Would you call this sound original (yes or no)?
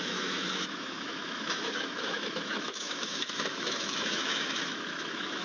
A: no